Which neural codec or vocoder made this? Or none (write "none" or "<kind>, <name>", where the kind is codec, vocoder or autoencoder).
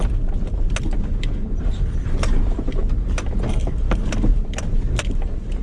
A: vocoder, BigVGAN v2